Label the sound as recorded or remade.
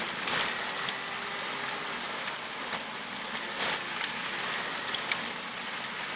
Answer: recorded